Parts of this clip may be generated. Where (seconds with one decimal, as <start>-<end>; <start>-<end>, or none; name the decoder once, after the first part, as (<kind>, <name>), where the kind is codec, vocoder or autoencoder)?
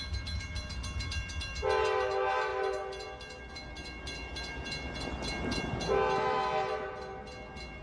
none